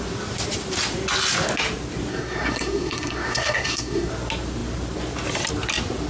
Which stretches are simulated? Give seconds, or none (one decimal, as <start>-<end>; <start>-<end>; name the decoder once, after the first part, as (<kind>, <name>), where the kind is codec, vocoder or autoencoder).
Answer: 2.1-4.1 (codec, SNAC)